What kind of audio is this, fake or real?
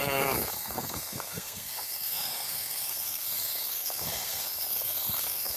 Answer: fake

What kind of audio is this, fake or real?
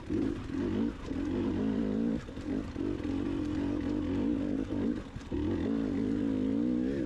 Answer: real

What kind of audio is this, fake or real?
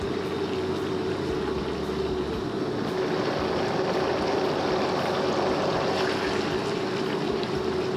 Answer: real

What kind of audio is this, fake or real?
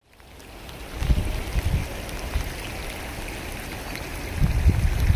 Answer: real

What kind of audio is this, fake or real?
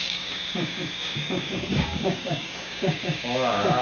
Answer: fake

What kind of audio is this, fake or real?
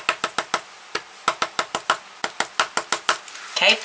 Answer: real